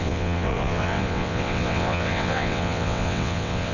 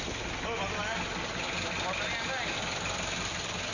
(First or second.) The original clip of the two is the second